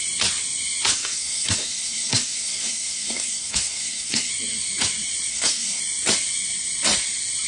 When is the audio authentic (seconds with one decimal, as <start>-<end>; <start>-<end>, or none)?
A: 0.0-0.9; 4.3-5.3; 5.8-7.5